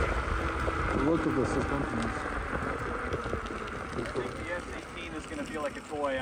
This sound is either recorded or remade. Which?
recorded